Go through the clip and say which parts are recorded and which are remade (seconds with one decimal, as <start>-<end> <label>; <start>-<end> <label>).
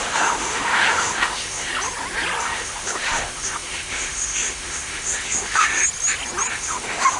0.0-1.7 remade; 1.7-2.4 recorded; 2.4-5.8 remade; 5.8-6.5 recorded; 6.5-7.2 remade